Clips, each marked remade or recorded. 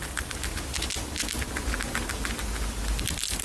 recorded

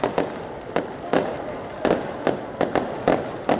recorded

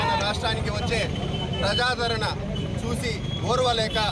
recorded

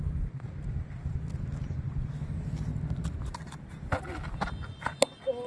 recorded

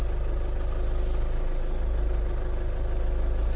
recorded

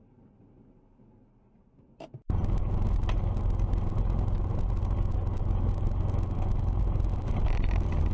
recorded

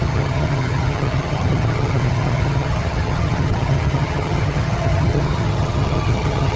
remade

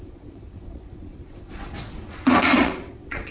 remade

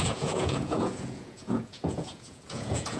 remade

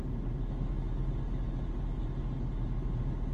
recorded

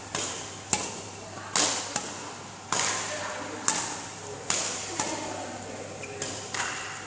recorded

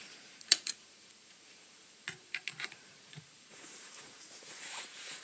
remade